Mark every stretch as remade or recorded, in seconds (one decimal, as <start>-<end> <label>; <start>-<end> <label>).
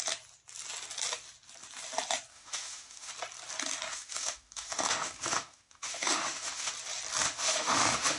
0.0-2.3 recorded; 2.3-3.1 remade; 3.1-3.9 recorded; 3.9-6.7 remade; 6.7-7.2 recorded; 7.2-8.2 remade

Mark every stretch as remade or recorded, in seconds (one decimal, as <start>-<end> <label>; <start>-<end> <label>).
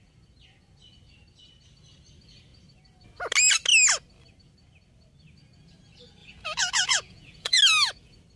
0.0-6.2 recorded; 6.2-7.6 remade; 7.6-8.4 recorded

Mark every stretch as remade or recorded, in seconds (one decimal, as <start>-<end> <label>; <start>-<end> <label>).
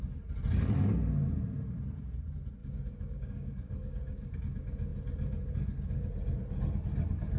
0.0-2.6 recorded; 2.6-4.4 remade; 4.4-7.4 recorded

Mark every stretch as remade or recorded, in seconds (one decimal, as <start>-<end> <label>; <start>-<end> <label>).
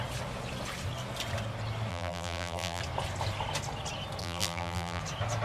0.0-1.9 recorded; 1.9-2.8 remade; 2.8-4.2 recorded; 4.2-5.0 remade; 5.0-5.4 recorded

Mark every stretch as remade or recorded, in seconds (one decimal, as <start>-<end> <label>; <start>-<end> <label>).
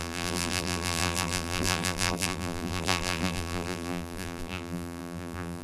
0.0-5.6 remade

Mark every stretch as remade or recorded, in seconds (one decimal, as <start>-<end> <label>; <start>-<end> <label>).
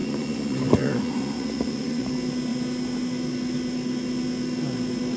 0.0-2.1 remade; 2.1-5.2 recorded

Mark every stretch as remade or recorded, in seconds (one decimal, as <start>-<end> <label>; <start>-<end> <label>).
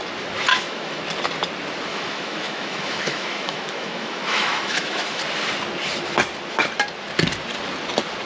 0.0-0.5 recorded; 0.5-1.0 remade; 1.0-1.9 recorded; 1.9-5.2 remade; 5.2-8.3 recorded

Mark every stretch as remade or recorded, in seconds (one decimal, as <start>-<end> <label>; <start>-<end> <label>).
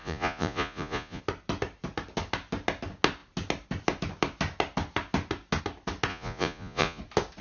0.0-1.2 remade; 1.2-6.1 recorded; 6.1-7.0 remade; 7.0-7.4 recorded